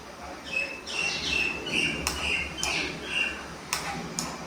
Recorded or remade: recorded